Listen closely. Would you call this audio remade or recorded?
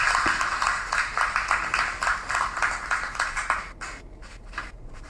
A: recorded